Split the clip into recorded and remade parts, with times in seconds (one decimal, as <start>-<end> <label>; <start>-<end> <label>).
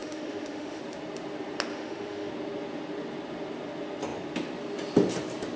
0.0-0.8 remade; 0.8-1.7 recorded; 1.7-2.3 remade; 2.3-5.6 recorded